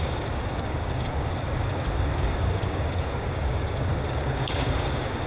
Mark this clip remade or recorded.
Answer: remade